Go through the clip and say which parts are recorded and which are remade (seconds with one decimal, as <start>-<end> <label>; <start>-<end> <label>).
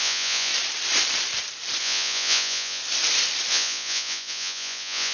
0.0-0.5 remade; 0.5-1.8 recorded; 1.8-2.8 remade; 2.8-3.5 recorded; 3.5-5.1 remade